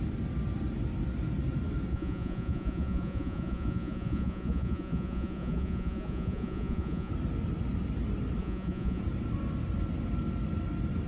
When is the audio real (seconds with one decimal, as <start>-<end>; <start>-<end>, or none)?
0.0-1.9; 7.1-8.4; 9.0-11.1